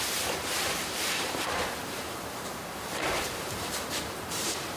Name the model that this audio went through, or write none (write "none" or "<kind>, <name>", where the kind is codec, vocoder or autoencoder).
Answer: vocoder, BigVGAN v2